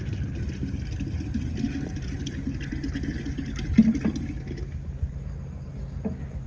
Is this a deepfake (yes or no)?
no